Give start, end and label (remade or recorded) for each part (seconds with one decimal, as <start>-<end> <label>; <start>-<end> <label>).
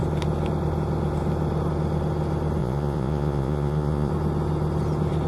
0.0-2.6 recorded; 2.6-4.1 remade; 4.1-5.3 recorded